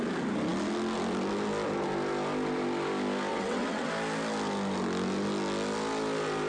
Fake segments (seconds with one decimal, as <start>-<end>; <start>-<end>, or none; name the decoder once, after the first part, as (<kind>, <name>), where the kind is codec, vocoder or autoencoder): 3.3-3.9 (vocoder, WaveNeXt)